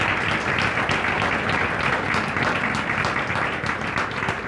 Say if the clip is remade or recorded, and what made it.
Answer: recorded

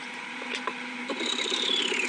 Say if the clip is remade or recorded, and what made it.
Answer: remade, vocoder, BigVGAN v2